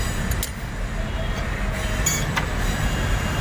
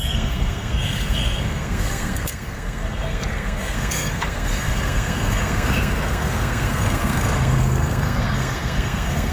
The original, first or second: first